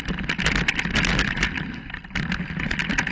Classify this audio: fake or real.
real